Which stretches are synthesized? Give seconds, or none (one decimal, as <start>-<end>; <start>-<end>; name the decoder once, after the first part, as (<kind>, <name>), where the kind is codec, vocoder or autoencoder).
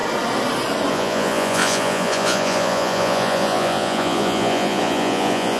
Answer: 0.9-5.6 (vocoder, Vocos)